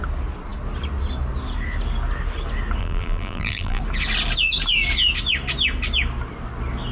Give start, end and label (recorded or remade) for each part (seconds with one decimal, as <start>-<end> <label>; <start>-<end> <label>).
0.0-2.8 recorded; 2.8-3.8 remade; 3.8-6.9 recorded